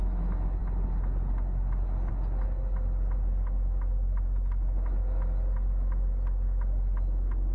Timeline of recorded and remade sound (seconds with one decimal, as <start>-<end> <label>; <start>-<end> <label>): 0.0-7.5 recorded